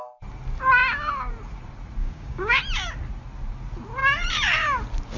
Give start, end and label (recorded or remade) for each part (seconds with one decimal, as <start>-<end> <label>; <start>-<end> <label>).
0.0-2.0 recorded; 2.0-2.6 remade; 2.6-5.2 recorded

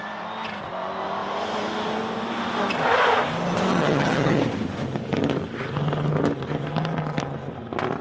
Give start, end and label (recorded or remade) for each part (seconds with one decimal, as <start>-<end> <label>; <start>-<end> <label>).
0.0-3.7 recorded; 3.7-4.4 remade; 4.4-8.0 recorded

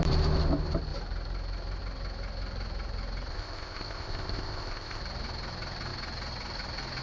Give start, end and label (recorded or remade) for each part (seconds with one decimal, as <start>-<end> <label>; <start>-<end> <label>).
0.0-3.3 recorded; 3.3-5.0 remade; 5.0-7.0 recorded

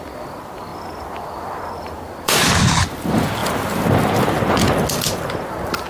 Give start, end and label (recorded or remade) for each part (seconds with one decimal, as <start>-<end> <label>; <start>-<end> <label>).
0.0-5.9 recorded

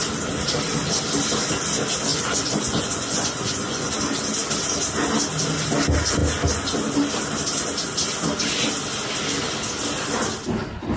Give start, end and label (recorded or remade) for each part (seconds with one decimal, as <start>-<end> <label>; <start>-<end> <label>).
0.0-2.1 recorded; 2.1-3.9 remade; 3.9-11.0 recorded

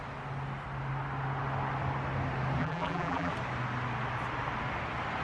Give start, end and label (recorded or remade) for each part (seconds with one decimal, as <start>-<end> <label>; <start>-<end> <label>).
0.0-2.6 recorded; 2.6-3.3 remade; 3.3-5.2 recorded

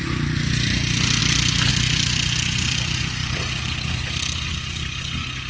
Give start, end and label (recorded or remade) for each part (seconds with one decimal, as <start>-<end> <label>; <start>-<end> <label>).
0.0-5.5 recorded

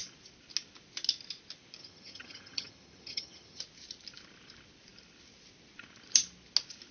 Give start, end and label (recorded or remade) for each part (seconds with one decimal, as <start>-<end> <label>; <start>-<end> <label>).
0.0-1.8 recorded; 1.8-3.6 remade; 3.6-6.9 recorded